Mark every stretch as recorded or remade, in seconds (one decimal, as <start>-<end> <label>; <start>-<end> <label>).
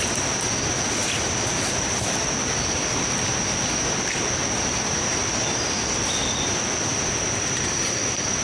0.0-8.4 recorded